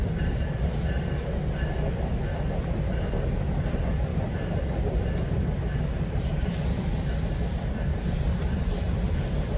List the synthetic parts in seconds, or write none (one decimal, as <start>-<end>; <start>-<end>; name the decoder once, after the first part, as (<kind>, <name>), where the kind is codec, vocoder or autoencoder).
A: 0.0-0.5 (vocoder, BigVGAN v2); 4.1-5.1; 7.9-9.6